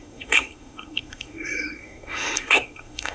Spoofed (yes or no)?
yes